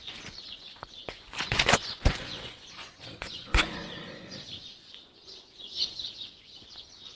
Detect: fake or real fake